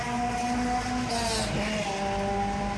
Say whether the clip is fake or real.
real